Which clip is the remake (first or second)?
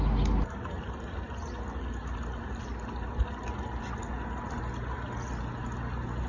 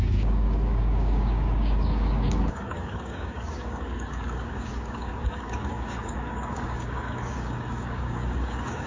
second